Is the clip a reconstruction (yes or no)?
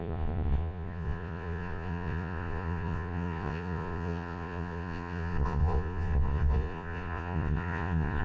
yes